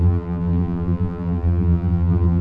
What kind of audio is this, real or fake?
fake